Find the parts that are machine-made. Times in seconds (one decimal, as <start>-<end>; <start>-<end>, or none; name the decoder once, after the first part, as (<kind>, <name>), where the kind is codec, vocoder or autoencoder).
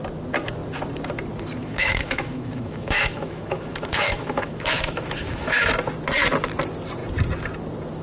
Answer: 1.6-5.7 (autoencoder, DAC-VAE)